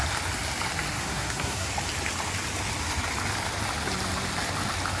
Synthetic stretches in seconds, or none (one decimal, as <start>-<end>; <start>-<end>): 1.0-1.7